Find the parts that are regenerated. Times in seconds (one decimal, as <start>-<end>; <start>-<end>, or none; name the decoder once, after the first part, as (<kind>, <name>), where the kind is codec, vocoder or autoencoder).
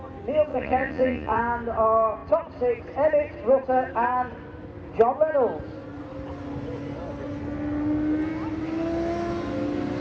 0.5-1.4 (vocoder, Vocos)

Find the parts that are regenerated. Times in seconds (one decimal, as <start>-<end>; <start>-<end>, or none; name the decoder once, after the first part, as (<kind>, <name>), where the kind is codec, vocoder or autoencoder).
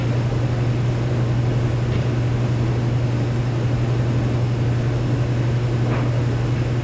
none